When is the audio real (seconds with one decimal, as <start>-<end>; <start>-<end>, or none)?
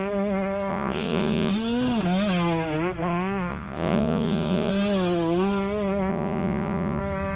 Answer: 0.0-0.7; 1.5-3.5; 4.7-6.1; 7.0-7.4